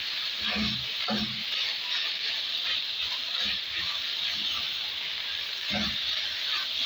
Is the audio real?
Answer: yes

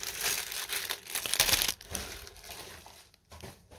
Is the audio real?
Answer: no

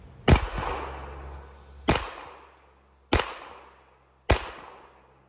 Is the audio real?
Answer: yes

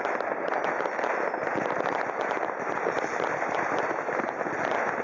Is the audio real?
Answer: yes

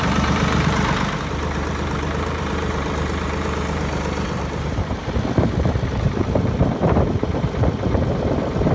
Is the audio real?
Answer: no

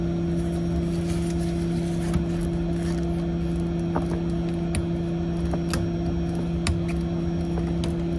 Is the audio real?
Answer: yes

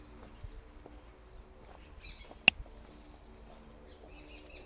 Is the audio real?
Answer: yes